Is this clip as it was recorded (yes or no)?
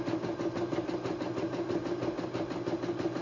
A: yes